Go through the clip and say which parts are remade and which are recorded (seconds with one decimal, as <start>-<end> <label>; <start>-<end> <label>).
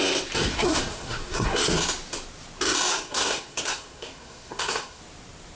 0.0-0.5 recorded; 0.5-1.6 remade; 1.6-2.9 recorded; 2.9-5.0 remade; 5.0-5.6 recorded